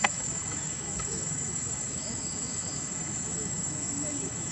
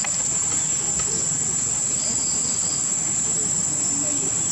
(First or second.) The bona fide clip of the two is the second